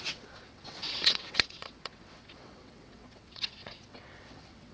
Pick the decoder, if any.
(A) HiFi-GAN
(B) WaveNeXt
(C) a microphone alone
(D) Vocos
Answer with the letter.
B